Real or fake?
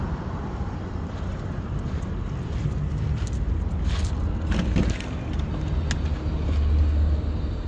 real